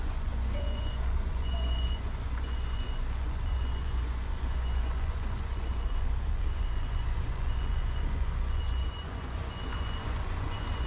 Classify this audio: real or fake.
fake